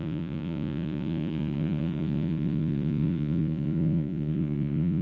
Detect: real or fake fake